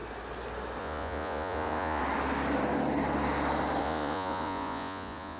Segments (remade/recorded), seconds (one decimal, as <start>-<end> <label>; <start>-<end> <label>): 0.0-0.8 recorded; 0.8-2.0 remade; 2.0-3.8 recorded; 3.8-5.4 remade